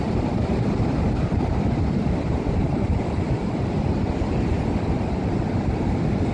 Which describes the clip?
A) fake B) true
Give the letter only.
B